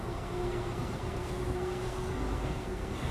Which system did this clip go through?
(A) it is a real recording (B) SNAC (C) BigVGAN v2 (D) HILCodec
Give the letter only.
B